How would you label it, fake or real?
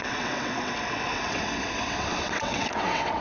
fake